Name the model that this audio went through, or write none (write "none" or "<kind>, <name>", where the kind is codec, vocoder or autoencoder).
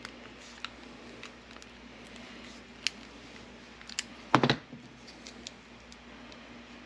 none